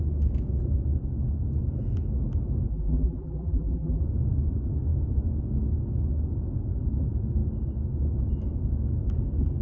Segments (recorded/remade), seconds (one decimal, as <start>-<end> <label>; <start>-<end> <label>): 0.0-2.7 recorded; 2.7-4.0 remade; 4.0-9.6 recorded